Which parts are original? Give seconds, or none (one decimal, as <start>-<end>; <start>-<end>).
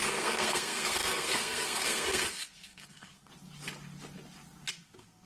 3.3-4.7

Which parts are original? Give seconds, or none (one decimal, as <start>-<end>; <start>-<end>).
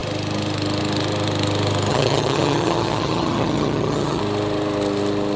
0.0-1.9; 4.2-5.4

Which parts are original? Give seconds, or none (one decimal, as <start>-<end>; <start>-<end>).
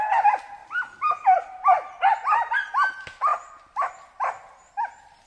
0.0-5.3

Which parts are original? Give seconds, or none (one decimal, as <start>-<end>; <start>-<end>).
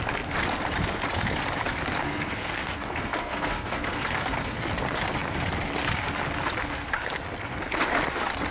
0.0-2.0; 4.6-8.5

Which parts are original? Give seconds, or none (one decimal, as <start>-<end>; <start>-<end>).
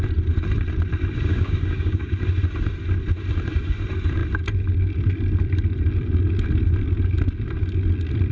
0.0-1.3; 2.2-8.3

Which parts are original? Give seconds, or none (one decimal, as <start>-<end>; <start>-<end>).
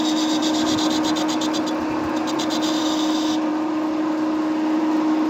0.0-5.3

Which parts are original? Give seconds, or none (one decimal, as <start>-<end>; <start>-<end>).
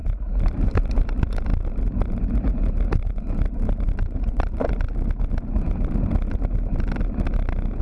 0.7-1.5; 4.7-7.8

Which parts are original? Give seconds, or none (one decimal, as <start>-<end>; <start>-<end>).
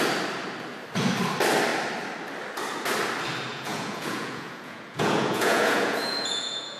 0.0-3.5